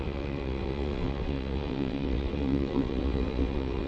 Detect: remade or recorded remade